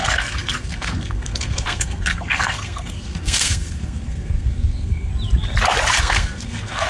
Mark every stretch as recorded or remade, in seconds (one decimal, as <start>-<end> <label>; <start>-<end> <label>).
0.0-5.1 remade; 5.1-6.0 recorded; 6.0-6.9 remade